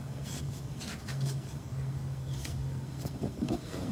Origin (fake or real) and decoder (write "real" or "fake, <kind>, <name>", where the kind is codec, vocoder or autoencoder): fake, codec, SNAC